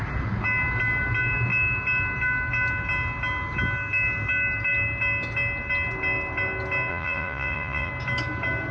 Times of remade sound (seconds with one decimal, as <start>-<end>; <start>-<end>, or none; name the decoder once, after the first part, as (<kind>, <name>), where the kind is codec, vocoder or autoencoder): 6.9-7.9 (vocoder, Vocos)